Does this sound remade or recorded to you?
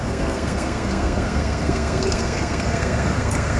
remade